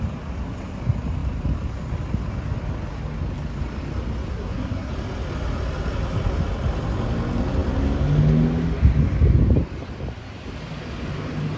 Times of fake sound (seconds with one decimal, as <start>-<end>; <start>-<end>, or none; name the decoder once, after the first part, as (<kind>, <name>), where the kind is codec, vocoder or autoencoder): 4.3-4.9 (codec, SNAC)